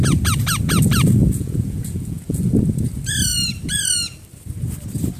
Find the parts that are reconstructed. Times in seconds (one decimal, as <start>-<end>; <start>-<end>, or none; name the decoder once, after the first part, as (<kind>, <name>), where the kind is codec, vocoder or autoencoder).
1.2-2.6 (vocoder, Vocos)